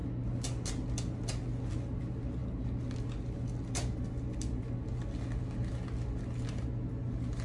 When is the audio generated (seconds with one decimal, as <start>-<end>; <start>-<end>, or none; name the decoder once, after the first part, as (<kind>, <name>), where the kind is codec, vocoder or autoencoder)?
none